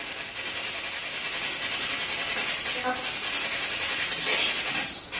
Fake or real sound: real